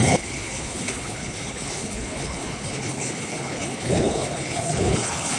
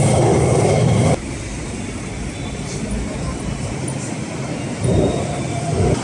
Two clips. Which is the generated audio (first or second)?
first